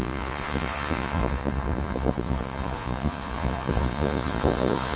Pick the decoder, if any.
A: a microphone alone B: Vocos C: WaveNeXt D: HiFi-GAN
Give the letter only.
B